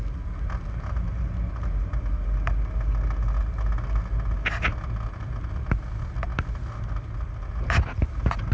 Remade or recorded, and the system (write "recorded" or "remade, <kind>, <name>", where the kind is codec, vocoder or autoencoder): recorded